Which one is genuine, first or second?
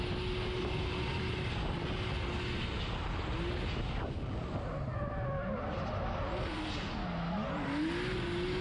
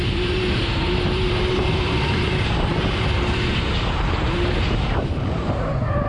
first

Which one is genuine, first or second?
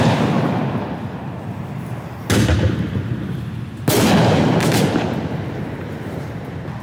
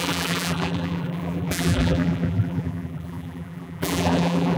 first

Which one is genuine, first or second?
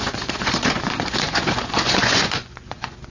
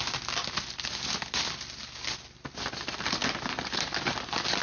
second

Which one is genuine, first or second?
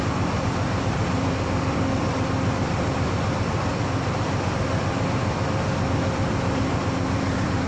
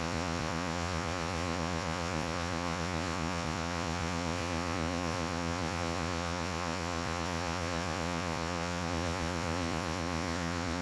first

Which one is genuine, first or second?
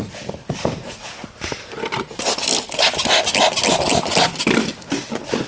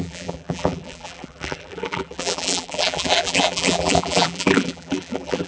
first